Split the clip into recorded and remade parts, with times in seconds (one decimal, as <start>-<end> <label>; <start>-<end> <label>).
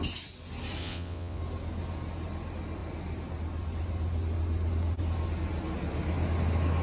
0.0-0.8 recorded; 0.8-1.4 remade; 1.4-6.8 recorded